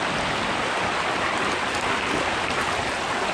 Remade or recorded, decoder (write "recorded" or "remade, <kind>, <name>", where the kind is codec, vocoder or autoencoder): recorded